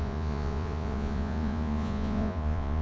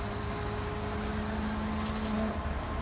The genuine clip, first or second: second